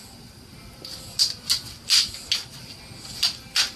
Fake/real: real